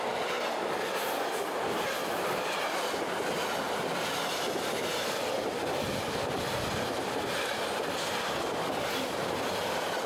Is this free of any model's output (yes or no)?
yes